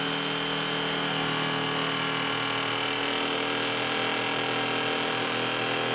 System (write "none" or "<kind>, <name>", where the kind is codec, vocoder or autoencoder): none